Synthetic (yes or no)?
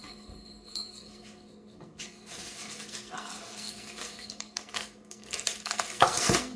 yes